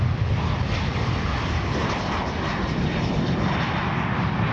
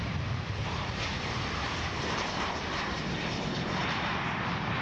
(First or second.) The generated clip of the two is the second